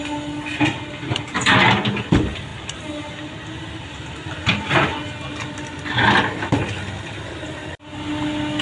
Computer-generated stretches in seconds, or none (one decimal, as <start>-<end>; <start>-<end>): none